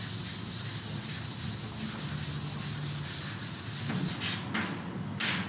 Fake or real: real